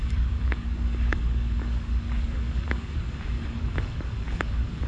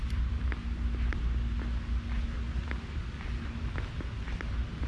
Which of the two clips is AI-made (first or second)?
first